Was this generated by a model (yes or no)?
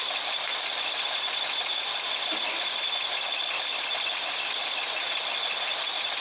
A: no